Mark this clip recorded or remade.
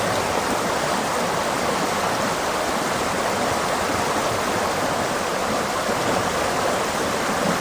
recorded